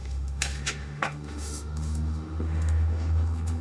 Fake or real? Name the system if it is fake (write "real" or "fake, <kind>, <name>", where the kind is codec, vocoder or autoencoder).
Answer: fake, autoencoder, DAC-VAE